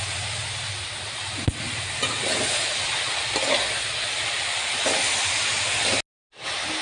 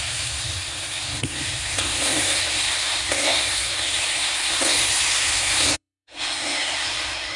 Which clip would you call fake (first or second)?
second